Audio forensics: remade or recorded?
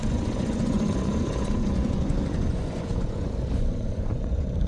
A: remade